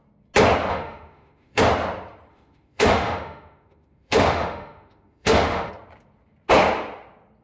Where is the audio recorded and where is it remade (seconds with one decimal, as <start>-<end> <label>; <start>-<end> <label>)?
0.0-0.7 recorded; 0.7-1.6 remade; 1.6-2.3 recorded; 2.3-5.7 remade; 5.7-7.4 recorded